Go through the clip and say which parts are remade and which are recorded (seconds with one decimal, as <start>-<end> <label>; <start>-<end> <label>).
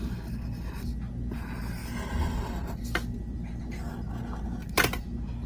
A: 0.0-5.5 recorded